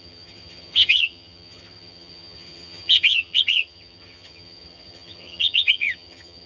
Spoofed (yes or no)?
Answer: yes